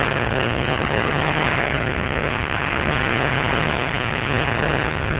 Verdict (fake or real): fake